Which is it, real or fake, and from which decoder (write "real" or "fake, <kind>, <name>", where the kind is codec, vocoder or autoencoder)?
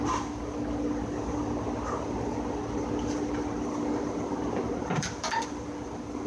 fake, vocoder, BigVGAN v2